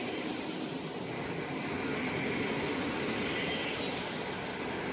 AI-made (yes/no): no